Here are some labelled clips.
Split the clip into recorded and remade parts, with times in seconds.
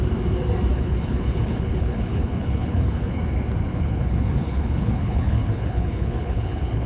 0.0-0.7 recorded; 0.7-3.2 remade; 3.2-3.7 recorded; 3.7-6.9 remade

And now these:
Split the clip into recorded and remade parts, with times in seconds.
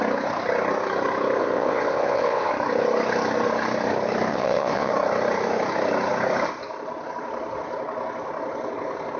0.0-1.4 recorded; 1.4-2.5 remade; 2.5-4.3 recorded; 4.3-4.9 remade; 4.9-9.2 recorded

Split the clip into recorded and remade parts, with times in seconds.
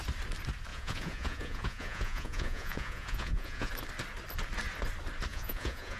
0.0-0.7 recorded; 0.7-3.7 remade; 3.7-5.3 recorded; 5.3-6.0 remade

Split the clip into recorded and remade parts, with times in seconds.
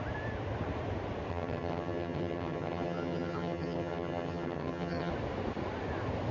0.0-1.3 recorded; 1.3-5.1 remade; 5.1-6.3 recorded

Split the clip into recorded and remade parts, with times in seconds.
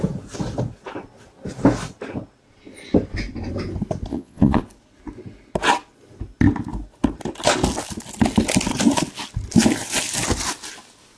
0.0-4.1 recorded; 4.1-4.6 remade; 4.6-11.2 recorded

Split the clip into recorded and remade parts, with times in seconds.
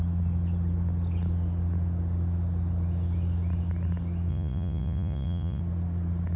0.0-4.3 recorded; 4.3-5.6 remade; 5.6-6.4 recorded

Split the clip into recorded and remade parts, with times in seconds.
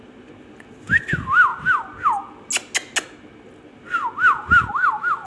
0.0-5.3 recorded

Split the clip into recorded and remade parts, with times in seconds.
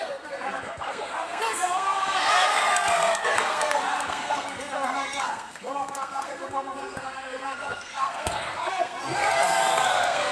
0.0-10.3 remade